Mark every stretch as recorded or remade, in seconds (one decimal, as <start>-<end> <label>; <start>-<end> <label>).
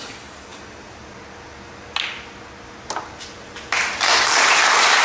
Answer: 0.0-5.0 recorded